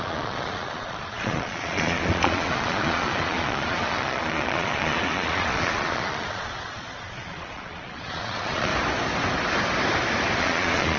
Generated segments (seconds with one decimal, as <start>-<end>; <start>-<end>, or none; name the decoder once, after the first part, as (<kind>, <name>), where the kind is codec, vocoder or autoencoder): 0.0-8.7 (vocoder, Vocos); 10.4-11.0